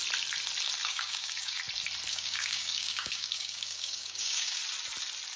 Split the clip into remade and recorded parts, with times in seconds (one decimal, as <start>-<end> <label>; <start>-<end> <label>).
0.0-0.8 recorded; 0.8-1.6 remade; 1.6-2.1 recorded; 2.1-4.6 remade; 4.6-5.4 recorded